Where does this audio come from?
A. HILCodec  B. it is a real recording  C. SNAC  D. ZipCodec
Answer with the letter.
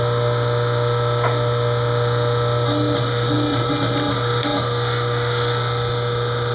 B